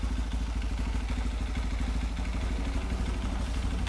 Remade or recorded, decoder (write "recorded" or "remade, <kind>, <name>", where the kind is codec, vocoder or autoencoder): recorded